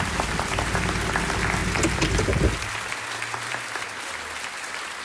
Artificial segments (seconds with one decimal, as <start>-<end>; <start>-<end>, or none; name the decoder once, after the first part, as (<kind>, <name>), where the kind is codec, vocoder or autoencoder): none